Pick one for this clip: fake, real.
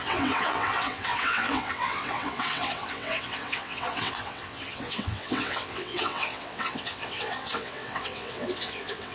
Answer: fake